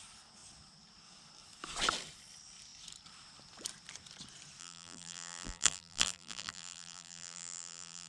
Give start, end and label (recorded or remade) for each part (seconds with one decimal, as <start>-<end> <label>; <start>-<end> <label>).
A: 0.0-4.6 recorded; 4.6-8.1 remade